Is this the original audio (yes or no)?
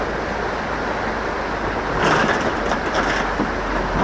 yes